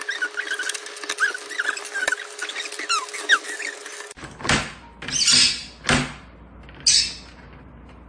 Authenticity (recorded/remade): recorded